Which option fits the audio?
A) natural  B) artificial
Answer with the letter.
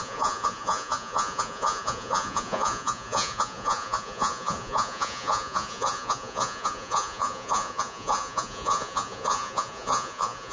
B